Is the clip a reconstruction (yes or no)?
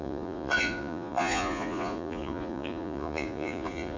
yes